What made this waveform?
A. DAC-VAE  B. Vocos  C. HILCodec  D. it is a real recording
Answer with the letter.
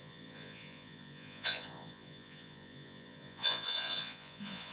B